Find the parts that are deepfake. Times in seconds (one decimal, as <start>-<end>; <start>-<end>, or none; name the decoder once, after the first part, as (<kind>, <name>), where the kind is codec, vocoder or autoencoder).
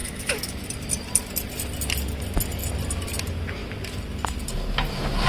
0.0-0.5 (autoencoder, DAC-VAE)